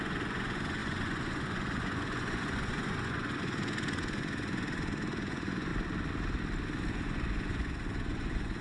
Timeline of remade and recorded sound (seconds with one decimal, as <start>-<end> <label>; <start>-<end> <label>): 0.0-5.7 remade; 5.7-6.9 recorded; 6.9-8.6 remade